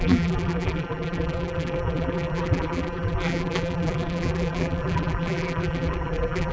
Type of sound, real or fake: fake